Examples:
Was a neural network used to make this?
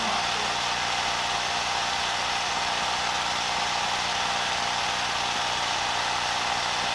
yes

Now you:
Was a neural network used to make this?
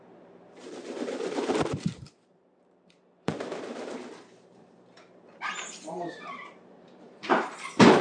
yes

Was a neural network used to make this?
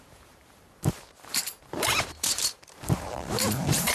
yes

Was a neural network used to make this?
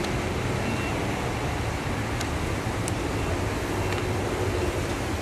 no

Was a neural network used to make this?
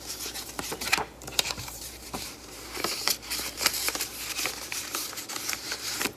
yes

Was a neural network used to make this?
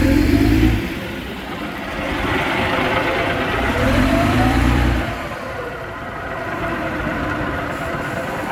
yes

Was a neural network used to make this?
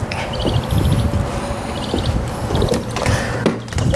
no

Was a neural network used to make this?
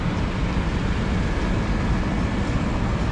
no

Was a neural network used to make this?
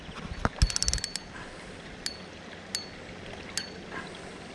no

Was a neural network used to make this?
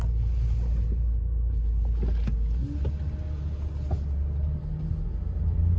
no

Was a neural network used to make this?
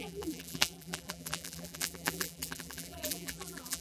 yes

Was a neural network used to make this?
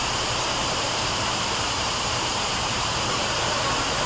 yes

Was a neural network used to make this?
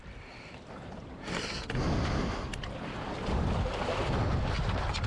no